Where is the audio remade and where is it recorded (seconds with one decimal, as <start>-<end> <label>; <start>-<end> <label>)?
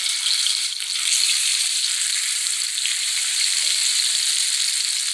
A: 0.0-0.7 remade; 0.7-1.5 recorded; 1.5-3.9 remade; 3.9-5.1 recorded